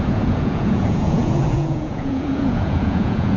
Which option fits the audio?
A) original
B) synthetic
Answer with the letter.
B